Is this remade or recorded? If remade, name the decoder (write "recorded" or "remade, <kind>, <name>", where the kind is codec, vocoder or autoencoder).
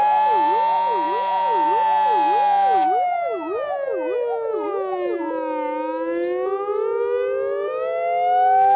recorded